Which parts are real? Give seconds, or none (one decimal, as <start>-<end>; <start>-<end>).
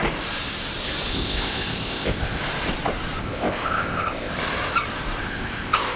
0.0-1.1; 2.4-3.2; 4.3-5.2